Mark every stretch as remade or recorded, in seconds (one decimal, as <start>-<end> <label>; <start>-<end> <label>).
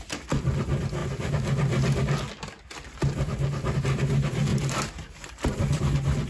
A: 0.0-4.5 recorded; 4.5-5.8 remade; 5.8-6.3 recorded